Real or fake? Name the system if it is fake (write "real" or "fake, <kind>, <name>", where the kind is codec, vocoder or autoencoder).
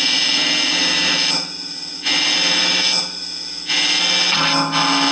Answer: real